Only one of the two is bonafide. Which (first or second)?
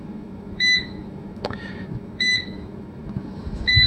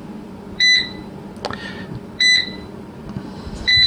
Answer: second